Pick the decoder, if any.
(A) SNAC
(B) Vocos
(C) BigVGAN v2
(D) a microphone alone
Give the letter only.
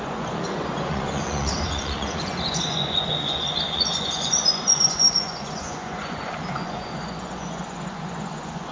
B